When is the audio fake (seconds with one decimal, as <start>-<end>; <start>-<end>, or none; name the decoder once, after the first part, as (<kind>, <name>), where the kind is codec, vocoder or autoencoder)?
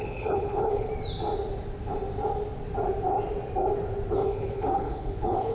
0.0-0.9 (codec, HILCodec); 4.2-5.5